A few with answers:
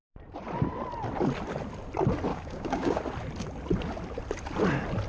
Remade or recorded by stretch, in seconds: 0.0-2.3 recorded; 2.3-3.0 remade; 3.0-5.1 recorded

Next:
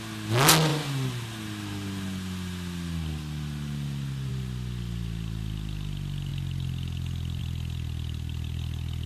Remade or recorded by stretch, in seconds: 0.0-9.1 recorded

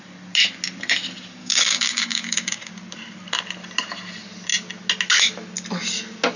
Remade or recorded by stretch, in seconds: 0.0-1.4 recorded; 1.4-2.7 remade; 2.7-6.4 recorded

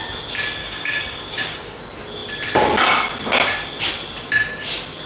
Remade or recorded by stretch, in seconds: 0.0-0.6 recorded; 0.6-1.8 remade; 1.8-5.1 recorded

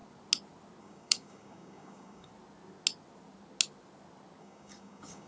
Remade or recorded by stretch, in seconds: 0.0-0.8 recorded; 0.8-2.3 remade; 2.3-4.4 recorded; 4.4-5.3 remade

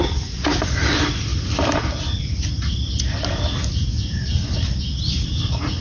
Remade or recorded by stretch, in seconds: 0.0-5.8 recorded

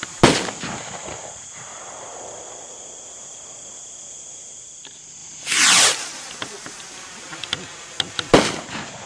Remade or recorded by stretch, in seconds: 0.0-9.1 recorded